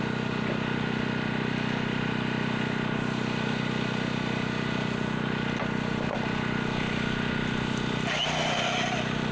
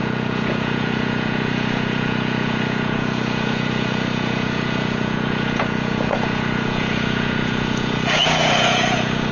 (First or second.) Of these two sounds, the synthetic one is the second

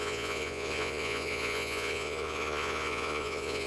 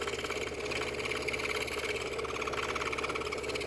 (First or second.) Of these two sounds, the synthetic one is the first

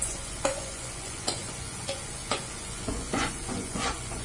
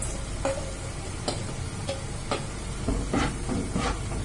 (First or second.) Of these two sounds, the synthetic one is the first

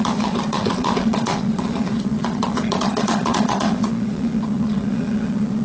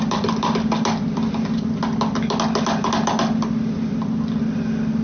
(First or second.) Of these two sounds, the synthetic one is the first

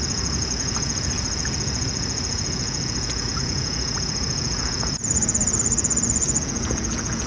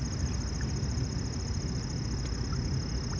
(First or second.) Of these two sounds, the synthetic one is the first